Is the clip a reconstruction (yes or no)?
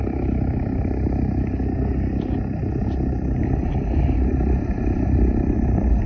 no